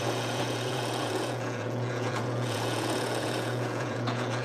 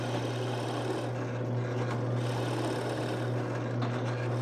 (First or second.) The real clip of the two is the second